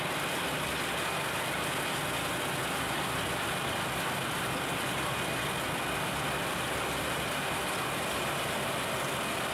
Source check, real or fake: real